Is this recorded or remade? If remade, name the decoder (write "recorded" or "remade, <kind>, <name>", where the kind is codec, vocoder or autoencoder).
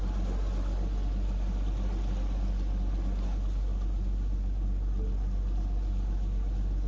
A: recorded